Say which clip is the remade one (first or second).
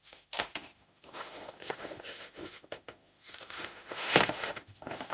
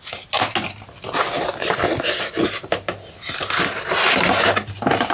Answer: first